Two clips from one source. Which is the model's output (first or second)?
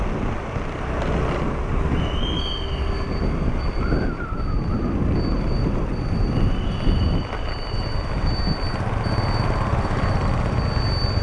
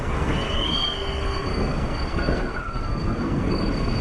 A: second